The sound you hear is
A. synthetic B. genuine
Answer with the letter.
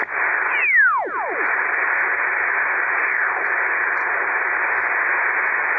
B